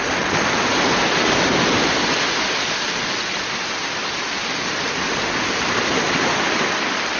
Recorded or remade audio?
recorded